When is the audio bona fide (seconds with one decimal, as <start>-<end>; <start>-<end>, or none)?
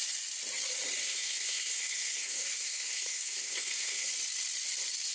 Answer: 0.0-1.0; 4.1-5.1